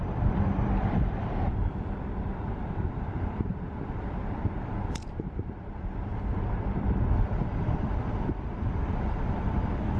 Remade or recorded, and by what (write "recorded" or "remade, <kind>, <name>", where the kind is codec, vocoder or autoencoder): remade, vocoder, BigVGAN v2